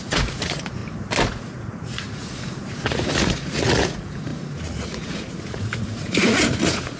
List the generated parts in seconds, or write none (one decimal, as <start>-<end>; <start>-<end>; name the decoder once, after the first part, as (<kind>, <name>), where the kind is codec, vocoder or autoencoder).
0.0-0.8 (vocoder, Vocos); 1.3-7.0

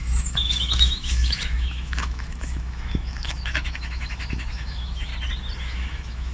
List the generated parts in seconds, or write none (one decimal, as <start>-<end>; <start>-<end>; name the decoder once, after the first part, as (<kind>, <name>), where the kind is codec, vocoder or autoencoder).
0.0-5.1 (autoencoder, DAC-VAE); 5.6-6.3

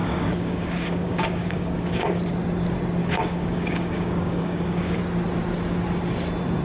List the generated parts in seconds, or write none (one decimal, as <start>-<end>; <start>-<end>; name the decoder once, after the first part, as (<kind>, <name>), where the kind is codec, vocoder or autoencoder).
0.0-2.2 (codec, DAC); 3.0-5.0